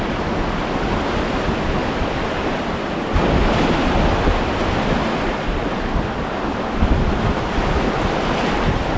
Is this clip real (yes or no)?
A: yes